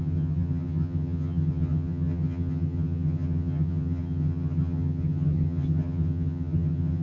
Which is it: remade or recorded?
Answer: remade